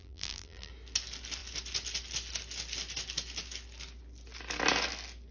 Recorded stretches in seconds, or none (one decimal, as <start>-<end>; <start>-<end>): 0.7-5.3